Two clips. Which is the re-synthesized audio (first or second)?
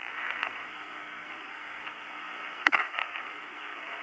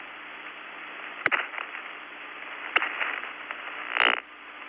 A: first